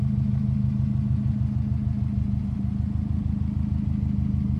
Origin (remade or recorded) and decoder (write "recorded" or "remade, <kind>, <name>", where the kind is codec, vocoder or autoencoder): recorded